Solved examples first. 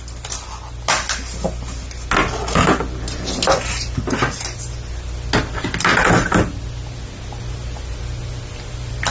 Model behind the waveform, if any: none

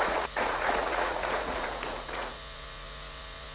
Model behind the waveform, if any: vocoder, Vocos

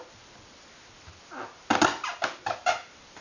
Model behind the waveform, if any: none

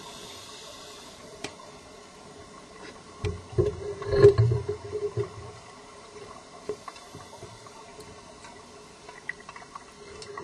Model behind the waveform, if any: vocoder, BigVGAN v2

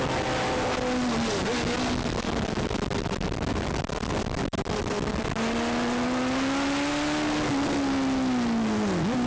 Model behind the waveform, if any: none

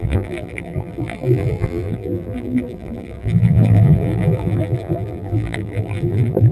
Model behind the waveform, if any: vocoder, BigVGAN v2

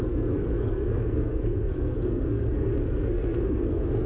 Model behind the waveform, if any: codec, SNAC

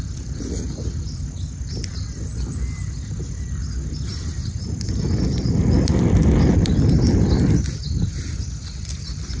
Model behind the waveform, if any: none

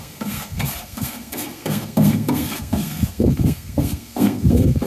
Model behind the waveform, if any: codec, SNAC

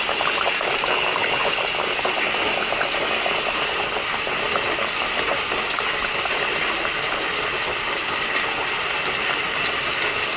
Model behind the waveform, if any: none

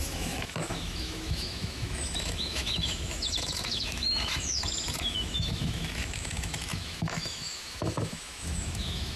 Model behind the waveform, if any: autoencoder, DAC-VAE